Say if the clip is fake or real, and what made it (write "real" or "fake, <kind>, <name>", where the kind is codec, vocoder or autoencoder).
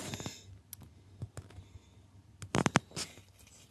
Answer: real